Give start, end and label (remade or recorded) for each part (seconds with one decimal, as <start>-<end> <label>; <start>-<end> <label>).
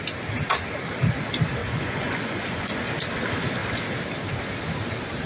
0.0-1.6 recorded; 1.6-2.8 remade; 2.8-5.3 recorded